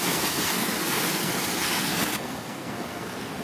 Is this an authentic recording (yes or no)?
no